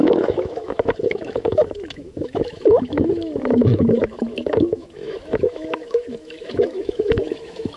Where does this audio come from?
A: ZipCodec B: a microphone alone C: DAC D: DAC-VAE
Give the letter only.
D